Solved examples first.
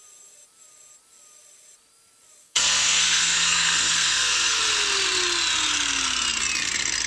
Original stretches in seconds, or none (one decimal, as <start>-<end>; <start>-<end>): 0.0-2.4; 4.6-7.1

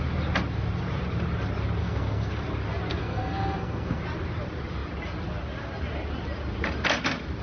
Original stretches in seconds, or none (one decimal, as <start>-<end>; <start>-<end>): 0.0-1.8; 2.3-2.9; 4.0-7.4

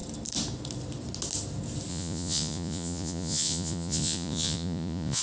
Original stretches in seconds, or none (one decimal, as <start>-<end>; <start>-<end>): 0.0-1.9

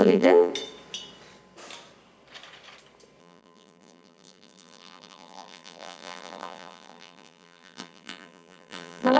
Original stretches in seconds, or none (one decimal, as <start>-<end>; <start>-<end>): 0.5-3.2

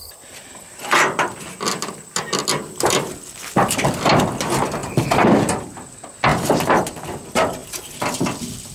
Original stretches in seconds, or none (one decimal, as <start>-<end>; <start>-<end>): 0.0-6.3; 7.0-8.7

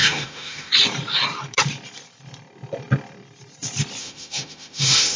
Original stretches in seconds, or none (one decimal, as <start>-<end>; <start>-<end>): 0.7-4.0

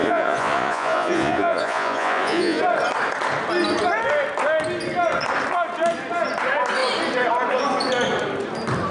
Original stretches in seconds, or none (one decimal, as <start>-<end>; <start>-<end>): 2.6-8.9

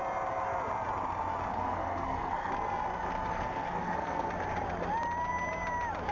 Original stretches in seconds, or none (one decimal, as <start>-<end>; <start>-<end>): 0.0-1.5; 2.5-3.3; 4.3-6.1